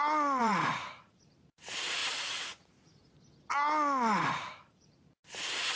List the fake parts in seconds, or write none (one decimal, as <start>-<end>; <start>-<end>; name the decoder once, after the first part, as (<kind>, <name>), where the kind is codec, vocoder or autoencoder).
0.4-1.2 (vocoder, Vocos); 2.0-3.1